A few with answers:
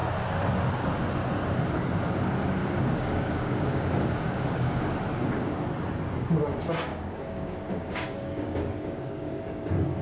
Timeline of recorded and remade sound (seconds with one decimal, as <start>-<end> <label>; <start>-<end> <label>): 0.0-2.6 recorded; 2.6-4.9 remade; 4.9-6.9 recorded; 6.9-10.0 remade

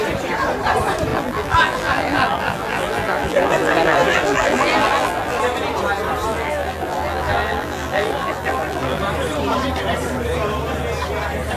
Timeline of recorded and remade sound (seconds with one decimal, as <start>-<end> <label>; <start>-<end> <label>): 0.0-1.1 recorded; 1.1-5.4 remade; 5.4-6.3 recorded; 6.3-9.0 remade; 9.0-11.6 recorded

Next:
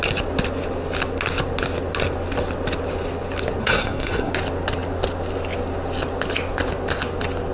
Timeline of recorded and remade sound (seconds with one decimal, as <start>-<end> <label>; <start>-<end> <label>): 0.0-3.6 recorded; 3.6-4.3 remade; 4.3-7.5 recorded

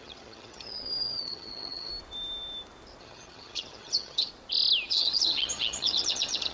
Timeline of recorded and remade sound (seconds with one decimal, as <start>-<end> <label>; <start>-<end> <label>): 0.0-1.9 remade; 1.9-3.0 recorded; 3.0-4.3 remade; 4.3-4.9 recorded; 4.9-6.5 remade